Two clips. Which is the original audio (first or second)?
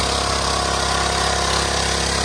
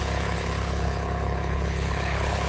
first